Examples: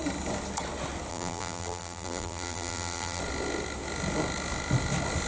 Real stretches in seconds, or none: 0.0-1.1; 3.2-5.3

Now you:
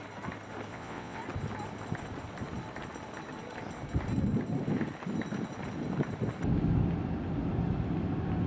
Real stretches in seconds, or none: 0.0-0.7; 1.2-8.5

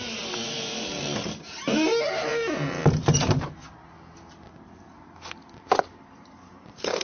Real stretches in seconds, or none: 0.0-7.0

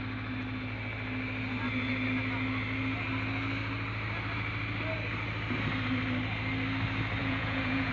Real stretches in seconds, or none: 0.0-7.2

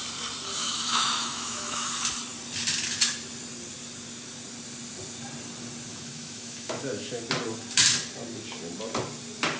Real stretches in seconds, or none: 0.0-0.6; 1.9-5.9; 7.2-9.6

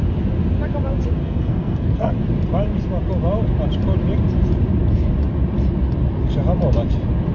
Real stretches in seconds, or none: 0.0-1.2; 2.1-7.3